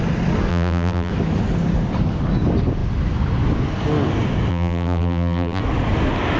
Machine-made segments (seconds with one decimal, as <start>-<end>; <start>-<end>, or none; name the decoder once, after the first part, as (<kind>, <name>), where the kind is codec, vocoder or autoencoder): 0.5-1.1 (vocoder, BigVGAN v2); 4.5-5.6